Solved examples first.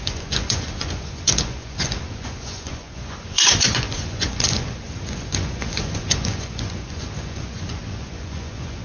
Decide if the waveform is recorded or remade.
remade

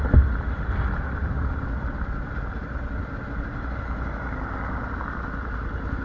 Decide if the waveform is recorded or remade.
recorded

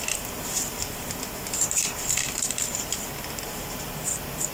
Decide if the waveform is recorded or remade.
remade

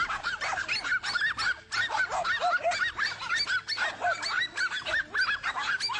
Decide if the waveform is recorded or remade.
recorded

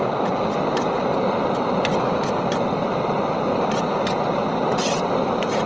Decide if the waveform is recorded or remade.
recorded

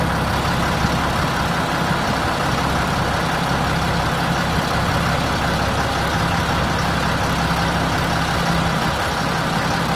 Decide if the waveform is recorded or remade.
recorded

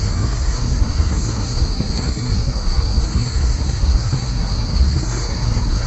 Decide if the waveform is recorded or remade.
remade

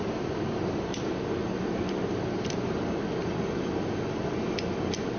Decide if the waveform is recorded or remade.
recorded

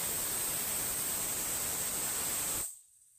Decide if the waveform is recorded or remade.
remade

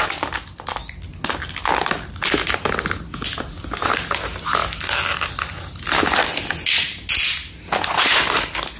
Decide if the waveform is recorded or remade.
recorded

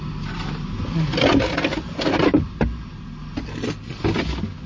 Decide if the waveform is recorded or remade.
recorded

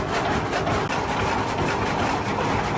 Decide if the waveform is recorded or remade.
recorded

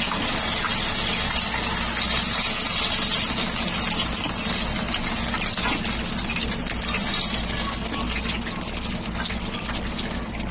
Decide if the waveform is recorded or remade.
recorded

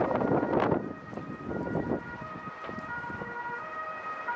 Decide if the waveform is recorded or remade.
recorded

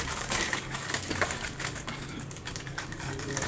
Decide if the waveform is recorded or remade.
remade